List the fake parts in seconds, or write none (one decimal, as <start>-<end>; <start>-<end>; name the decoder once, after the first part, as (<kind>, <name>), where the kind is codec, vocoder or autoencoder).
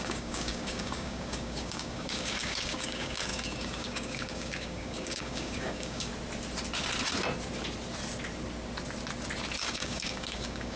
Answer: 0.0-6.1 (codec, DAC); 9.6-10.8